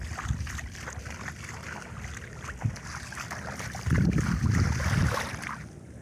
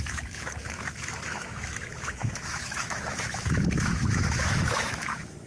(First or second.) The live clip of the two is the first